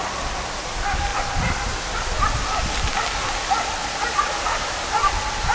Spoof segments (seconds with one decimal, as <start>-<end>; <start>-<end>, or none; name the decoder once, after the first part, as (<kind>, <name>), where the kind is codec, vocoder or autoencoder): none